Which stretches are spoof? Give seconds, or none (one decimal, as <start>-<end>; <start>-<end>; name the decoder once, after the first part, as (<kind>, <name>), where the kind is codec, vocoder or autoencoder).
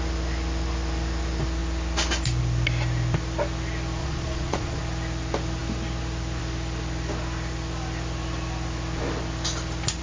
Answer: 4.0-4.8 (vocoder, Vocos)